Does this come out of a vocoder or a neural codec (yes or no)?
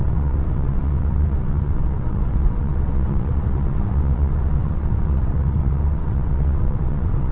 yes